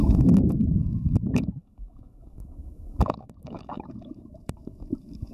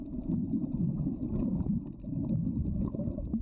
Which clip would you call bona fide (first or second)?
second